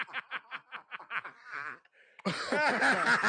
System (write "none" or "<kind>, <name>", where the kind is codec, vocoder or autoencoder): none